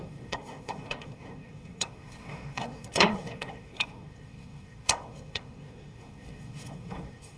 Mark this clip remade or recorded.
remade